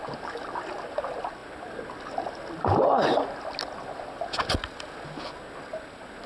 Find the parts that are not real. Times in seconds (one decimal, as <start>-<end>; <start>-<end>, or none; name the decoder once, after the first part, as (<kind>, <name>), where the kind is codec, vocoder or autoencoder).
none